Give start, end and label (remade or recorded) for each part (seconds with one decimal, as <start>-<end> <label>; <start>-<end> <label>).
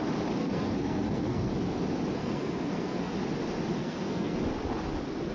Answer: 0.0-0.4 recorded; 0.4-1.5 remade; 1.5-2.2 recorded; 2.2-3.1 remade; 3.1-3.8 recorded; 3.8-4.4 remade; 4.4-5.3 recorded